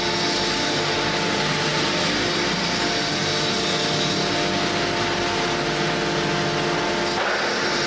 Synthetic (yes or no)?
no